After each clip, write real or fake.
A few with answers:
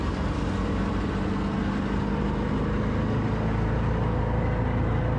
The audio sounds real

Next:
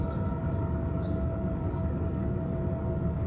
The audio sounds fake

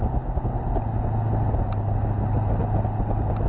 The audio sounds real